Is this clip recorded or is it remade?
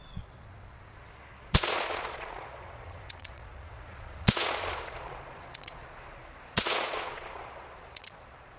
remade